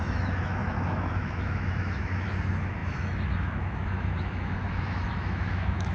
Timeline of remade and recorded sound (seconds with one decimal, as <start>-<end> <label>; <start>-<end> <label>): 0.0-5.9 remade